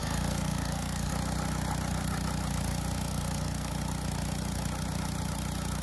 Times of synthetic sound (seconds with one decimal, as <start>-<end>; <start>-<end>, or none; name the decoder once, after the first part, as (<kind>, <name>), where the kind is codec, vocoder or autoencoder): 0.0-1.1 (codec, SNAC); 3.1-3.7